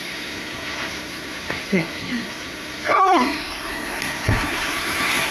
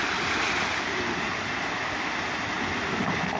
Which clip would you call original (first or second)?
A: second